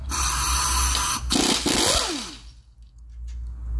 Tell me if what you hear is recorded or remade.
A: recorded